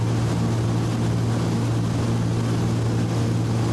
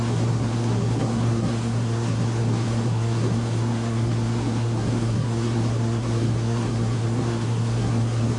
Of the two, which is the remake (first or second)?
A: second